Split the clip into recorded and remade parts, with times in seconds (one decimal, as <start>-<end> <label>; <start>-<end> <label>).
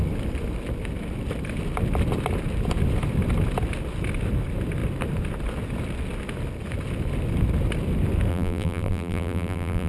0.0-8.3 recorded; 8.3-9.9 remade